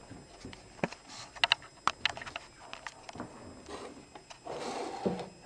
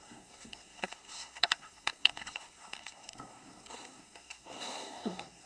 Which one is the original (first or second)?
first